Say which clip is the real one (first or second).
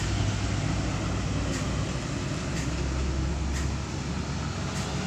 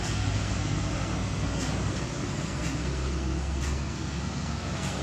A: first